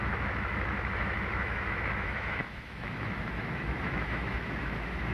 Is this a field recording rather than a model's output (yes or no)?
no